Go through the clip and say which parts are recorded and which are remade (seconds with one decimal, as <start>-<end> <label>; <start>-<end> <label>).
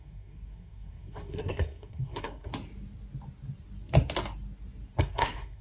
0.0-2.5 remade; 2.5-5.0 recorded; 5.0-5.6 remade